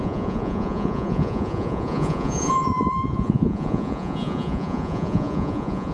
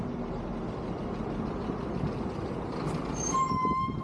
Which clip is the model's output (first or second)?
first